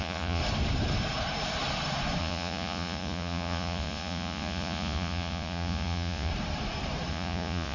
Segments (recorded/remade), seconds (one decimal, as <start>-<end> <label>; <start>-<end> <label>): 0.0-0.4 remade; 0.4-2.2 recorded; 2.2-6.3 remade; 6.3-7.1 recorded; 7.1-7.7 remade